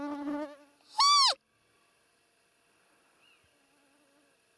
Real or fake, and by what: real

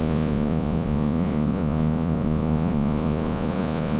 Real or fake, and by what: fake, vocoder, Vocos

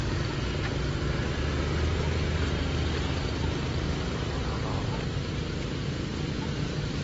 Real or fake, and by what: real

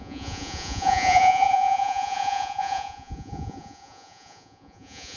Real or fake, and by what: fake, vocoder, Vocos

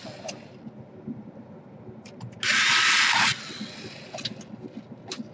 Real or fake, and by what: real